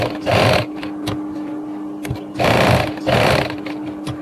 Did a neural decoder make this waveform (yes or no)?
no